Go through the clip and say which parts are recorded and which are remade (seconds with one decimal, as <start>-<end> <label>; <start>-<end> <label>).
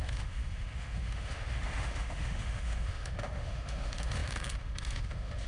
0.0-5.5 remade